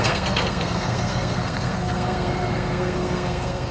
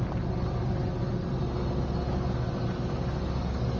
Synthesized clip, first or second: first